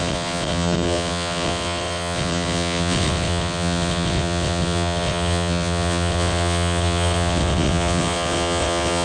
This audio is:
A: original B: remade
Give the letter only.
B